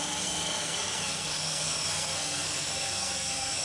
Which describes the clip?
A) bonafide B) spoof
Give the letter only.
B